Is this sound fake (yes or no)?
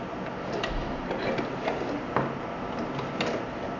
no